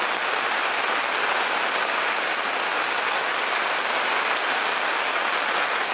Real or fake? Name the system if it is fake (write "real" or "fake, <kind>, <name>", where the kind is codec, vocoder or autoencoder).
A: real